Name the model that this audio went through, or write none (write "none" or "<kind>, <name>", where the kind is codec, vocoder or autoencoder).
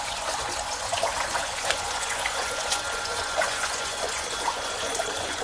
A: vocoder, Vocos